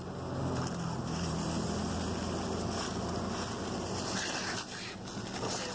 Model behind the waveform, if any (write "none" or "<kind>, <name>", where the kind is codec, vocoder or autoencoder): none